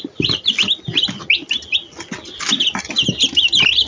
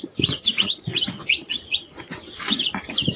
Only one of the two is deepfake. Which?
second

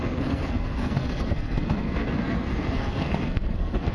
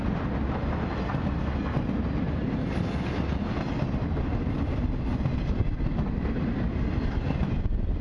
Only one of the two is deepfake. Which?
first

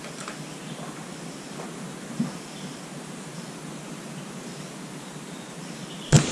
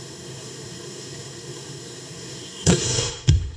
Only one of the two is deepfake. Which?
second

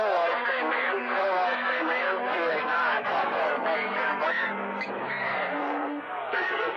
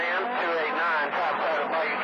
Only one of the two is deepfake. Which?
first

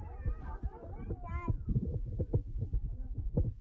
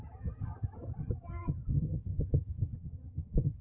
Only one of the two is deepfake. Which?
second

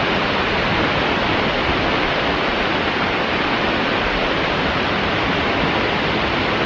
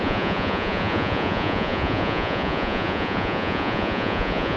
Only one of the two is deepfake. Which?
second